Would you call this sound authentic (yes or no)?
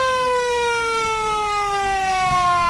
no